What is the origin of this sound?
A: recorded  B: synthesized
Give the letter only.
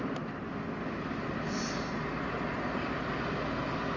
A